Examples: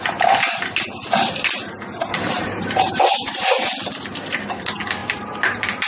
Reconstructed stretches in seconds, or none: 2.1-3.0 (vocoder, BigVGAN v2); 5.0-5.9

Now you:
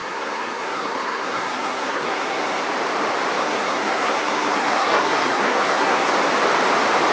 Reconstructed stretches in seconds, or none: 0.0-2.6 (codec, SNAC); 3.4-6.1

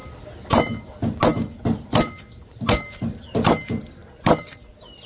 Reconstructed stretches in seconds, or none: none

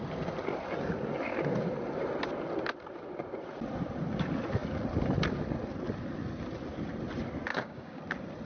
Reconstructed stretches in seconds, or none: 7.5-8.0 (codec, DAC)

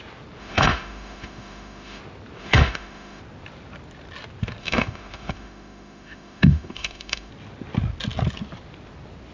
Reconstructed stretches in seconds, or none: 0.4-2.0 (autoencoder, DAC-VAE); 2.4-3.2; 4.6-7.3